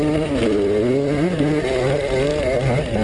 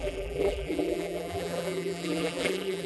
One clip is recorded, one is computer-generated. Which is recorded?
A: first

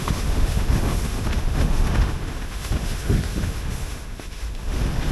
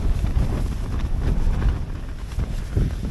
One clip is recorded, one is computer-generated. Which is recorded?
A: second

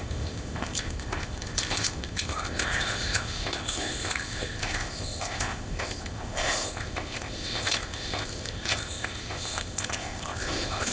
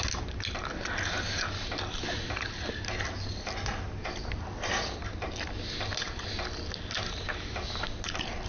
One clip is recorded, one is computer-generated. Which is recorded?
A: second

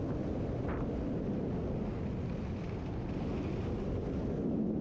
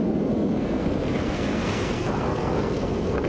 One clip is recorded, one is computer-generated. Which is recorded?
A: first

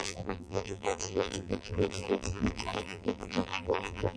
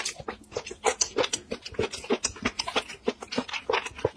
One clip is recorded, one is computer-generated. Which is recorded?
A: second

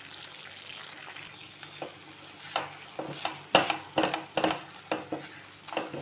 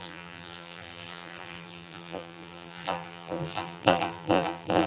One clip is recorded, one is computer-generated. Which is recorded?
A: first